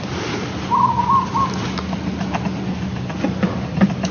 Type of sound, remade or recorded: recorded